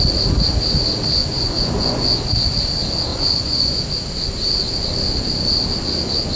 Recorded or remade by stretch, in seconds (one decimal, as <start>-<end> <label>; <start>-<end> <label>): 0.0-1.2 recorded; 1.2-2.2 remade; 2.2-3.1 recorded; 3.1-3.8 remade; 3.8-6.4 recorded